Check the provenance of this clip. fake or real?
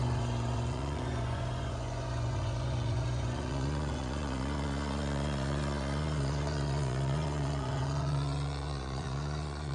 fake